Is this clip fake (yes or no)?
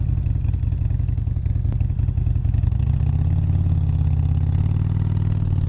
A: no